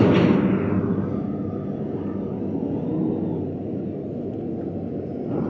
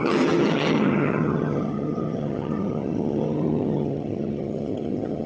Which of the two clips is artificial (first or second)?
second